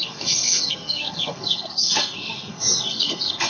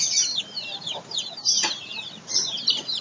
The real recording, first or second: second